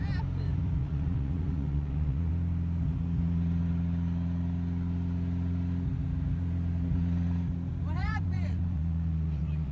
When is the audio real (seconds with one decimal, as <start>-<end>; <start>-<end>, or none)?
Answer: 0.0-0.8; 2.3-8.0